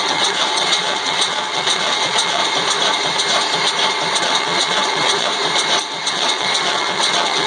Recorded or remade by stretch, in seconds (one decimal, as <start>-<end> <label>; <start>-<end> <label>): 0.0-2.4 remade; 2.4-4.2 recorded; 4.2-5.3 remade; 5.3-6.1 recorded; 6.1-7.5 remade